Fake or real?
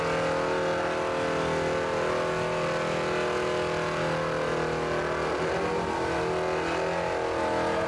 real